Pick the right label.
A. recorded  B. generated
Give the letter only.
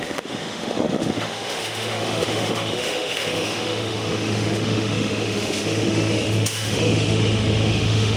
B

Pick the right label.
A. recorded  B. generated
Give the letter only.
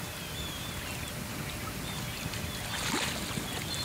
A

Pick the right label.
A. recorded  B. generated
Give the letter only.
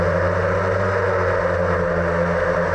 A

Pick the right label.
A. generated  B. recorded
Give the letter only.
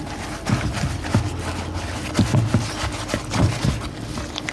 B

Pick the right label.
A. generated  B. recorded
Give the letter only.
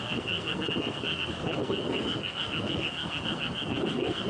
A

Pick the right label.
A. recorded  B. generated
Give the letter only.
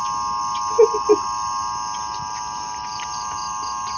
A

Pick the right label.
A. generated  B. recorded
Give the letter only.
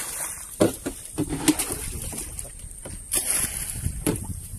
B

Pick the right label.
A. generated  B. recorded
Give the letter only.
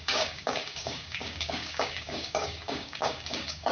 A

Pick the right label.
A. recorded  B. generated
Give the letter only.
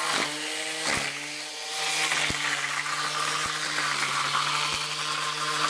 A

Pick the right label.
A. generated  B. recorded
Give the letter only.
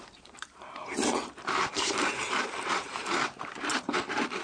A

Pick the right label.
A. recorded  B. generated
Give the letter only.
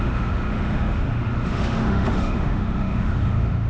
B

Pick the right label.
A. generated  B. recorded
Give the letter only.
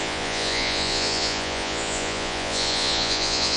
A